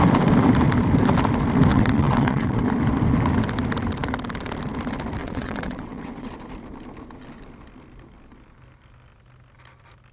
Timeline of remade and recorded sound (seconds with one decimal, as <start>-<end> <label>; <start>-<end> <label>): 0.0-1.7 recorded; 1.7-2.6 remade; 2.6-5.2 recorded; 5.2-6.3 remade; 6.3-10.1 recorded